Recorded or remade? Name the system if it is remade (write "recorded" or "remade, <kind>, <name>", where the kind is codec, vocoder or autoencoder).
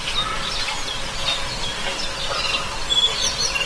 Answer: recorded